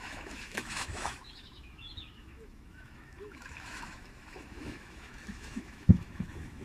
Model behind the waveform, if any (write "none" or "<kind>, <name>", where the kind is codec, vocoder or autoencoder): autoencoder, DAC-VAE